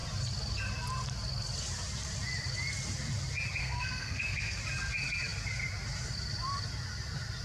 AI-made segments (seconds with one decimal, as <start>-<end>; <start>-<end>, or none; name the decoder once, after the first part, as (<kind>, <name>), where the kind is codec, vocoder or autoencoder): 3.6-4.6 (codec, SNAC)